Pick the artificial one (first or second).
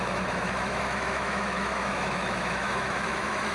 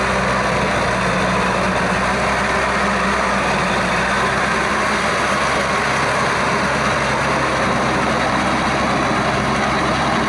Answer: first